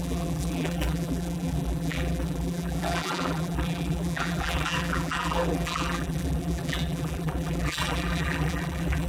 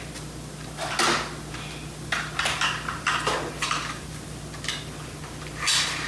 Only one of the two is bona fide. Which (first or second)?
second